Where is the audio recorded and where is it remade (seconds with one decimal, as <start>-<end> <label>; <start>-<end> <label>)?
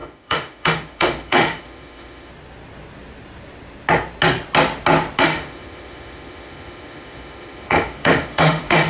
0.0-2.3 remade; 2.3-5.2 recorded; 5.2-8.9 remade